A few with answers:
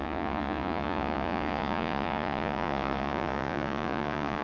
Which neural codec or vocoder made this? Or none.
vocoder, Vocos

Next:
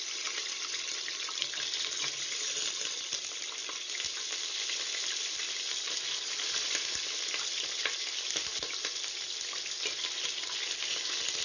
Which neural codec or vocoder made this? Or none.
none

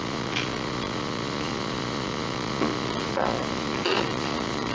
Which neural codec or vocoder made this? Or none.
vocoder, Vocos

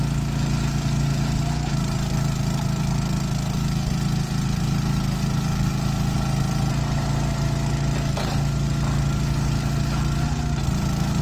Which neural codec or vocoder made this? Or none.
none